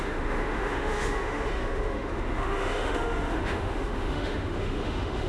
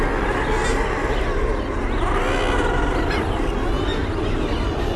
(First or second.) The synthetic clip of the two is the first